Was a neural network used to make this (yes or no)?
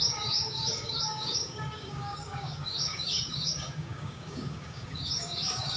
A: yes